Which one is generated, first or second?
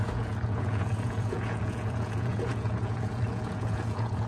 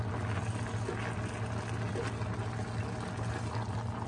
first